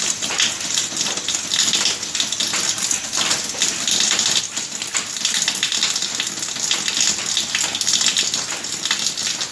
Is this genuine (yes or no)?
yes